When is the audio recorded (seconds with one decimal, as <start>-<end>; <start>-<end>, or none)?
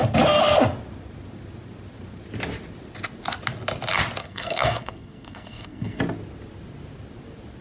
0.0-4.2; 6.0-7.6